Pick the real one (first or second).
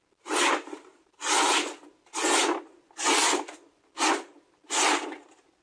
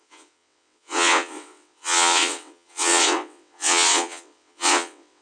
first